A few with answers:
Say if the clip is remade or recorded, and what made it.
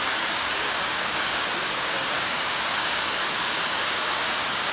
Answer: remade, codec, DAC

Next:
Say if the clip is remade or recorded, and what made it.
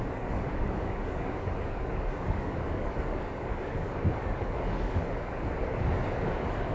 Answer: remade, codec, DAC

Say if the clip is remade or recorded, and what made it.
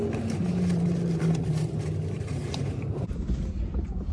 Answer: recorded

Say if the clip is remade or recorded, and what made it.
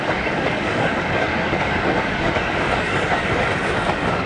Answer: remade, codec, DAC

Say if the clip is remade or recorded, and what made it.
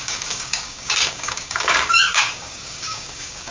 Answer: remade, codec, DAC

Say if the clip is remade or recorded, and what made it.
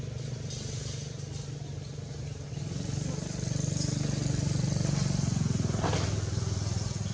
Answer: recorded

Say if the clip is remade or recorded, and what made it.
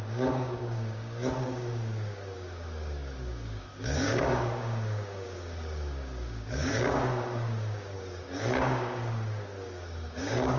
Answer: remade, codec, DAC